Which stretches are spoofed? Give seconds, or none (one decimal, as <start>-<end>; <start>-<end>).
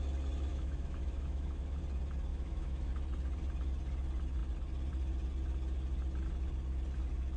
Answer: 0.5-1.8; 2.3-2.9